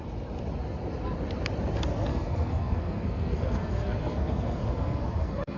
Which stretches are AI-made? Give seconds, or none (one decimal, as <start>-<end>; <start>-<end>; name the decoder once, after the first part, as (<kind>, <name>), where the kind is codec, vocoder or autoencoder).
2.1-5.6 (codec, SNAC)